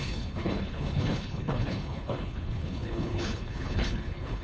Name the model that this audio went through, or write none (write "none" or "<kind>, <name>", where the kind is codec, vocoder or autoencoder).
codec, HILCodec